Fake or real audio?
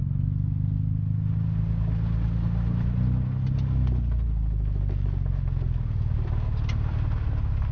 real